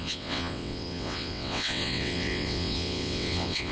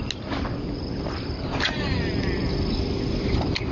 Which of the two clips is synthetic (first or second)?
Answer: first